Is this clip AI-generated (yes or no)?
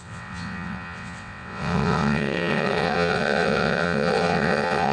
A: yes